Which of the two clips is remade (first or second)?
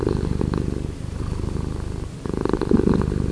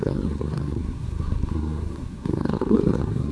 second